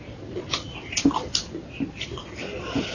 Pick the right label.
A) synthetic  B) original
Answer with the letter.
B